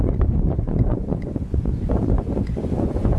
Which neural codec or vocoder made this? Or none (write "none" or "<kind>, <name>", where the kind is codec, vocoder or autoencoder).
vocoder, Vocos